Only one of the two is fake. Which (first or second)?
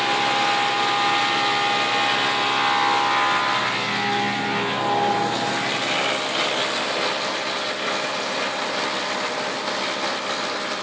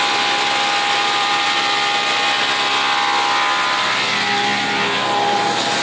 second